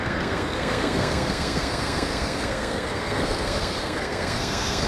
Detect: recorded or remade remade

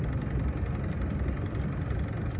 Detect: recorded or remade recorded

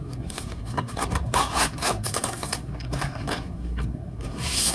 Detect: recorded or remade remade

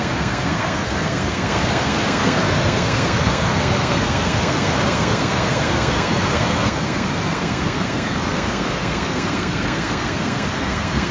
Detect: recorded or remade remade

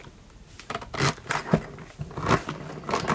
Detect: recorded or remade recorded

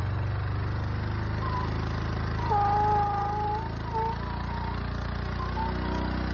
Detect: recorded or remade recorded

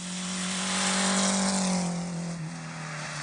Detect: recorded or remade recorded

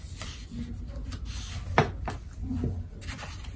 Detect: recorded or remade recorded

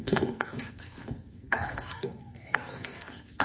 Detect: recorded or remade remade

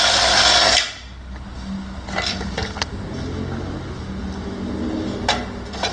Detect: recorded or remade recorded